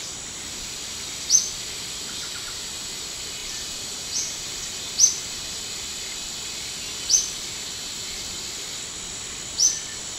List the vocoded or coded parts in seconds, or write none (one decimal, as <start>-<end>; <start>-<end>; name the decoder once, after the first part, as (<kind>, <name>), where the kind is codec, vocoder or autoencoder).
3.4-5.5 (vocoder, BigVGAN v2)